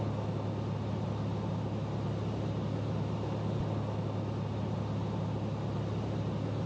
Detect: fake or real real